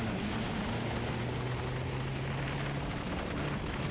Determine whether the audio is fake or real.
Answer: real